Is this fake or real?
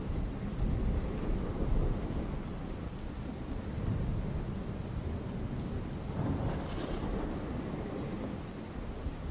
real